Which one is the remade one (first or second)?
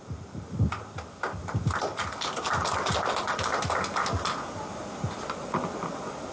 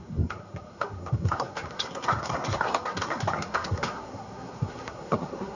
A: second